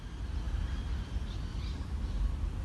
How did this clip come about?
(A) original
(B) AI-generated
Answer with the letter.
A